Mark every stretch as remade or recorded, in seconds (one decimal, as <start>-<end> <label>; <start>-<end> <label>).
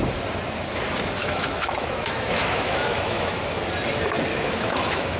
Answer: 0.0-1.2 recorded; 1.2-3.4 remade; 3.4-4.3 recorded; 4.3-5.2 remade